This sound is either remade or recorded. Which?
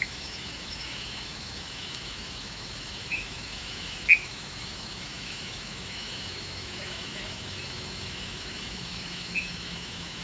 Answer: remade